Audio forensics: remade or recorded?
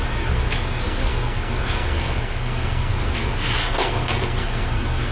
remade